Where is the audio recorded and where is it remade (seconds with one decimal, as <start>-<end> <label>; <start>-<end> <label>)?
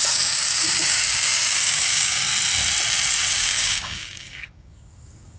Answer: 0.0-2.3 remade; 2.3-3.3 recorded; 3.3-5.4 remade